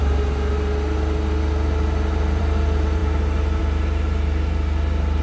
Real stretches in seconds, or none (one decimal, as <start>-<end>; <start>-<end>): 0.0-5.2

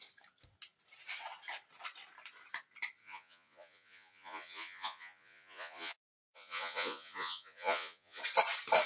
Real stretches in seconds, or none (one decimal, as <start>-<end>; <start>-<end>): 0.0-3.0; 8.2-8.9

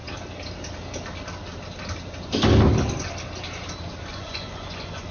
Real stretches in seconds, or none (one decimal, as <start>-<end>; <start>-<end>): 0.0-4.1

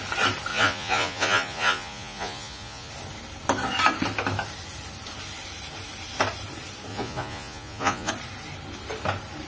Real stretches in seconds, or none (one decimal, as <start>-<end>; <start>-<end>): 0.0-0.5; 2.9-6.9; 8.1-9.5

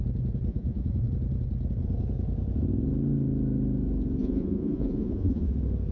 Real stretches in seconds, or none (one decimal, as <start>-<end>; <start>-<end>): 0.0-0.5; 1.1-4.2; 5.5-5.9

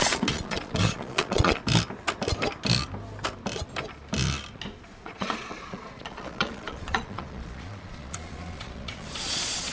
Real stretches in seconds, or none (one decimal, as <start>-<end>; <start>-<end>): 1.6-5.0